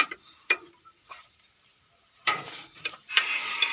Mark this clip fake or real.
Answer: fake